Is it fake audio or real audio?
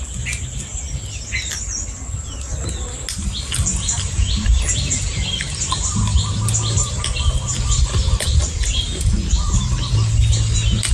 real